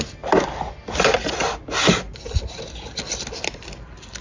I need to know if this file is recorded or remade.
recorded